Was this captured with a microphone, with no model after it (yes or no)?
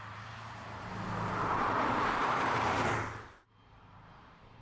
no